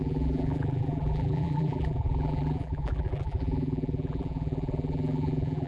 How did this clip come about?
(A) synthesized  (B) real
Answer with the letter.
A